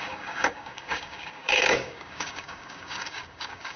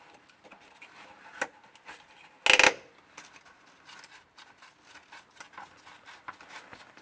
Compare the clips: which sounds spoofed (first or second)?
first